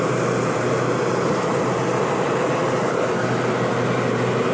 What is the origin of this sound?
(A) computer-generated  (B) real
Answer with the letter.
B